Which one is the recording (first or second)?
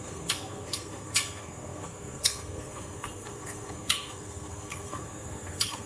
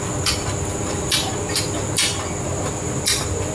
second